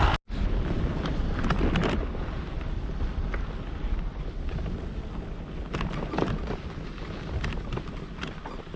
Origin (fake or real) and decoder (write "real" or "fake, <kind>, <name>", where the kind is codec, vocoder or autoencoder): real